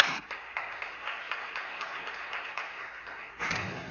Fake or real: fake